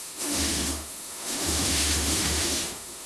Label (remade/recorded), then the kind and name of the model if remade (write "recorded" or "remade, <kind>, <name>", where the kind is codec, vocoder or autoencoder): remade, autoencoder, DAC-VAE